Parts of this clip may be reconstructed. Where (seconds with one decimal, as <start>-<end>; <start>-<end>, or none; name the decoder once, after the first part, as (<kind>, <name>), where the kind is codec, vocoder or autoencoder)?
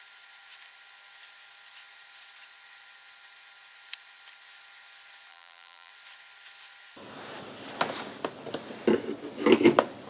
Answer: 5.3-5.9 (vocoder, BigVGAN v2)